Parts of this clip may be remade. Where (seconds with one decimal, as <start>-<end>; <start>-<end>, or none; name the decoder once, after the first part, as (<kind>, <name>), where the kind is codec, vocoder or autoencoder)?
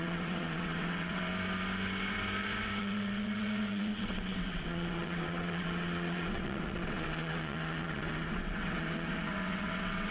0.0-1.3 (vocoder, WaveNeXt); 2.8-10.1